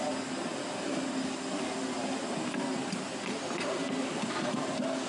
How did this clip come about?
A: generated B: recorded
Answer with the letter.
B